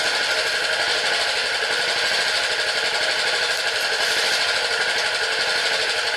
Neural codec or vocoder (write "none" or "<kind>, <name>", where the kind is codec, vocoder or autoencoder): none